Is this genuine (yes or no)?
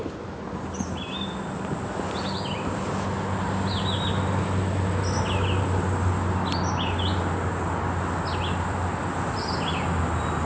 yes